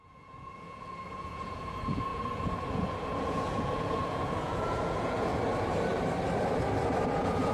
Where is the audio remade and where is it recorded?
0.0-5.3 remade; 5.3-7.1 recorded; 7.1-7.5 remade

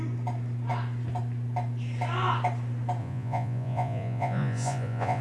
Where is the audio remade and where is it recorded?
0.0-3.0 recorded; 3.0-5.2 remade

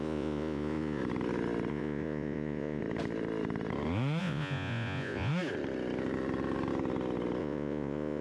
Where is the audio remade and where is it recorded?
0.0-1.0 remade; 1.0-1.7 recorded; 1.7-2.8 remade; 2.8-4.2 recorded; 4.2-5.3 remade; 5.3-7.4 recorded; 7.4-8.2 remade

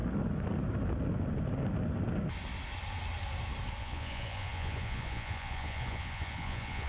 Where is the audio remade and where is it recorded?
0.0-3.8 recorded; 3.8-6.9 remade

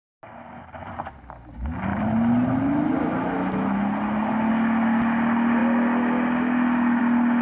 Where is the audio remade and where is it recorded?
0.0-7.4 recorded

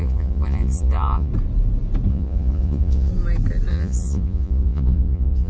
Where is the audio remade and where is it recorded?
0.0-1.3 remade; 1.3-2.1 recorded; 2.1-3.1 remade; 3.1-3.7 recorded; 3.7-5.5 remade